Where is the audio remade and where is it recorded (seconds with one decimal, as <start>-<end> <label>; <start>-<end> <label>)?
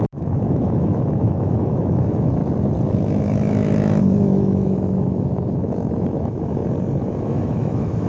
0.0-2.4 remade; 2.4-3.1 recorded; 3.1-6.6 remade; 6.6-7.2 recorded; 7.2-8.1 remade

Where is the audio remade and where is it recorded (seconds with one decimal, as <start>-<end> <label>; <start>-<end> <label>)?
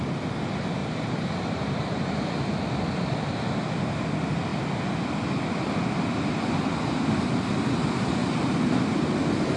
0.0-0.8 recorded; 0.8-2.3 remade; 2.3-8.2 recorded; 8.2-8.8 remade; 8.8-9.6 recorded